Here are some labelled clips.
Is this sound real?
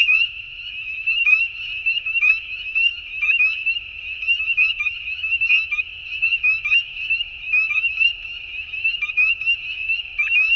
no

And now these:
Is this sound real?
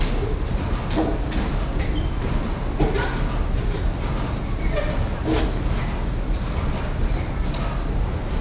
yes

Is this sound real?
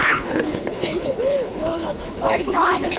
no